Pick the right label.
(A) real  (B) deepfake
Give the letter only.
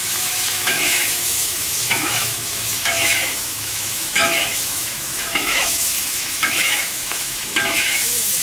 B